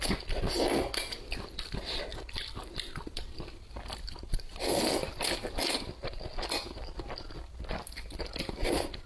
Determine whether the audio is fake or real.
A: real